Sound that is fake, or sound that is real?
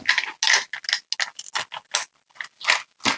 real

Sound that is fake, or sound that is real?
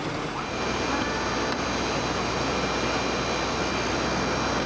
real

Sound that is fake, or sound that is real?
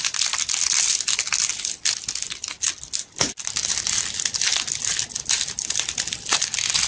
real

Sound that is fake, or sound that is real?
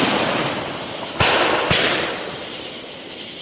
real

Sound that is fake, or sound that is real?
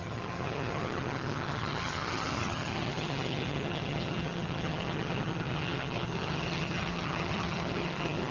fake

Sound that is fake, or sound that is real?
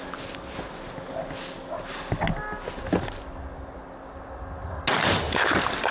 real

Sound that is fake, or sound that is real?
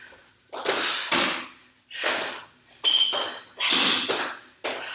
real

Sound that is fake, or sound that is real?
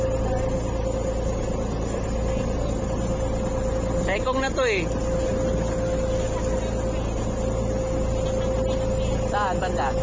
real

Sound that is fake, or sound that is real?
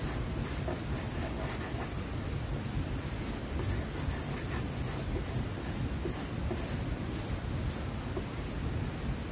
real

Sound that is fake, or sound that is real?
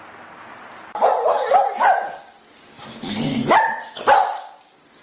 real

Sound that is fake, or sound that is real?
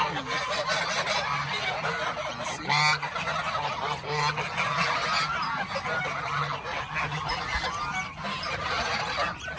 real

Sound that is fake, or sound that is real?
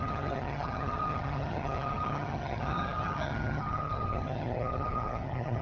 fake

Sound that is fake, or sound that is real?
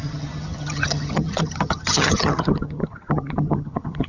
fake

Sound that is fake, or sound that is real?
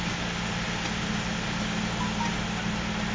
real